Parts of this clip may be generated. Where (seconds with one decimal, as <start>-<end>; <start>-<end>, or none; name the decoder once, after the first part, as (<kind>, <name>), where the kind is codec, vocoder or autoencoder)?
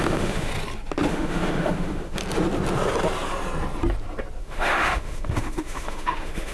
0.0-0.5 (autoencoder, DAC-VAE); 1.1-2.2; 4.4-6.5